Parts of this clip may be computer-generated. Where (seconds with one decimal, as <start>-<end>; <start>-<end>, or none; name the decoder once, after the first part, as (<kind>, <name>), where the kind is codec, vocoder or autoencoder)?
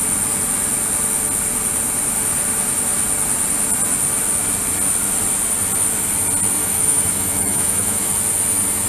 6.6-8.1 (autoencoder, DAC-VAE)